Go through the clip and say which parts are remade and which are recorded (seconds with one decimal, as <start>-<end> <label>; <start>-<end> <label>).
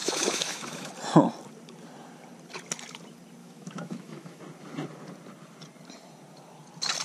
0.0-0.9 remade; 0.9-3.4 recorded; 3.4-4.4 remade; 4.4-7.0 recorded